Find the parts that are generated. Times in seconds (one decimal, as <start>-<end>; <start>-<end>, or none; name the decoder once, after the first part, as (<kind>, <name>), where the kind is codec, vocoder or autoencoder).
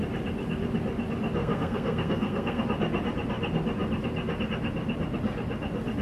1.4-2.6 (codec, SNAC)